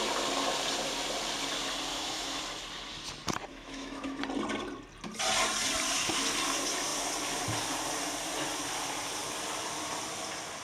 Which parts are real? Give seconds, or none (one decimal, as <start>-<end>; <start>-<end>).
0.0-1.9; 2.4-3.5; 4.2-10.6